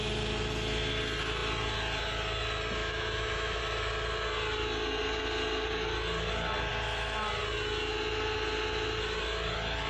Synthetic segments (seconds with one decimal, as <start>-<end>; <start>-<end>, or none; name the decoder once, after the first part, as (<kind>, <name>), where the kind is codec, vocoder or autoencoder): 2.8-3.6 (autoencoder, DAC-VAE)